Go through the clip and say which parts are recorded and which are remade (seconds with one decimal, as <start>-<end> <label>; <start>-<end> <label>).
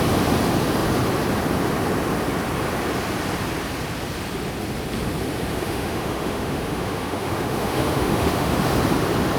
0.0-5.5 recorded; 5.5-8.6 remade; 8.6-9.4 recorded